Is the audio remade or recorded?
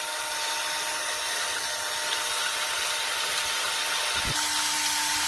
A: recorded